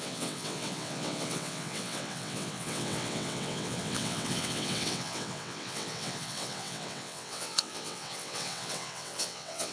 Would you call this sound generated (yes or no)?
yes